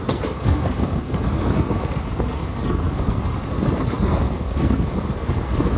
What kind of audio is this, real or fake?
fake